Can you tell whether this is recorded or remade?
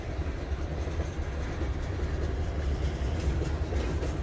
recorded